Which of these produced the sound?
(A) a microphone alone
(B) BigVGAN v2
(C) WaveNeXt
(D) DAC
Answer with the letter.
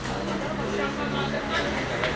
A